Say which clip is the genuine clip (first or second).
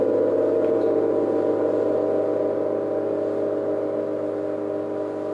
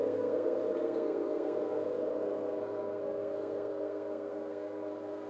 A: first